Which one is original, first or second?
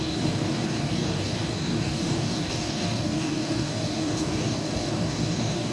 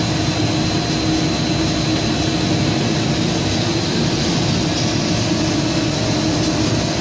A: second